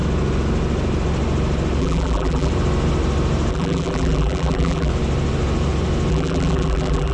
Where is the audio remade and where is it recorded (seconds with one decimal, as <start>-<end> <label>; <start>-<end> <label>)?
0.0-1.8 recorded; 1.8-2.5 remade; 2.5-3.5 recorded; 3.5-4.9 remade; 4.9-6.1 recorded; 6.1-7.1 remade

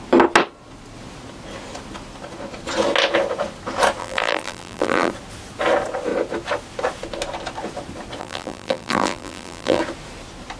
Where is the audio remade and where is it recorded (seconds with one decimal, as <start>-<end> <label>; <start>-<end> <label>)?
0.0-4.0 recorded; 4.0-5.1 remade; 5.1-8.2 recorded; 8.2-9.8 remade; 9.8-10.6 recorded

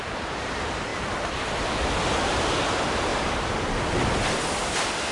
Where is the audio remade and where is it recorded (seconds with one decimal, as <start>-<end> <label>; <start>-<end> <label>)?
0.0-0.9 recorded; 0.9-2.6 remade; 2.6-3.1 recorded; 3.1-4.1 remade; 4.1-5.1 recorded

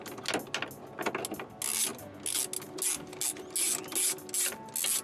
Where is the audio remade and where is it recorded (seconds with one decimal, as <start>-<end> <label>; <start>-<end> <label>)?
0.0-5.0 recorded